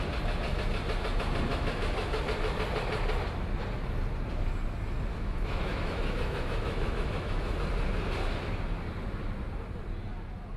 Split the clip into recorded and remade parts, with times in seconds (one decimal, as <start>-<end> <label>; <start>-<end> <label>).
0.0-1.5 recorded; 1.5-2.2 remade; 2.2-5.1 recorded; 5.1-7.5 remade; 7.5-10.6 recorded